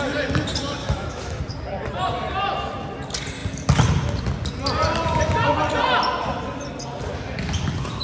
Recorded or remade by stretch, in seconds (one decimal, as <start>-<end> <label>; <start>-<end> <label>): 0.0-0.8 recorded; 0.8-1.4 remade; 1.4-8.0 recorded